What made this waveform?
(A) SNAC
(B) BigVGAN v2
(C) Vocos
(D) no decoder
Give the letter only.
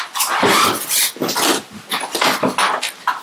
D